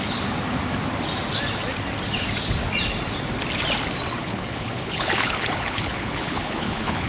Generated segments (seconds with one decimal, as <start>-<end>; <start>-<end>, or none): 4.2-7.1